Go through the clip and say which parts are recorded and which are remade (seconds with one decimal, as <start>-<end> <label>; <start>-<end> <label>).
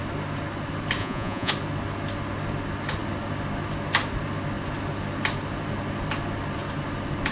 0.0-1.0 recorded; 1.0-1.5 remade; 1.5-7.3 recorded